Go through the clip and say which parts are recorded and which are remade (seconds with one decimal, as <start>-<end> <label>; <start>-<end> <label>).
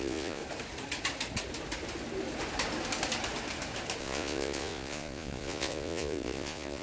0.0-0.4 remade; 0.4-4.0 recorded; 4.0-6.8 remade